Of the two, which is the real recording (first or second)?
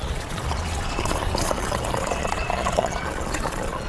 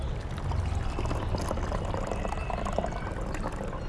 second